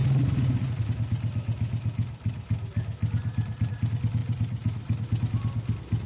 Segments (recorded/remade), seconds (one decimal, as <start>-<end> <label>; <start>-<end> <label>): 0.0-6.1 recorded